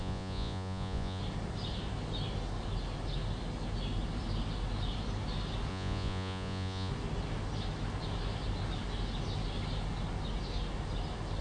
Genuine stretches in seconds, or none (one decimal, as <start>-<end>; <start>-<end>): 1.2-5.7; 6.9-11.4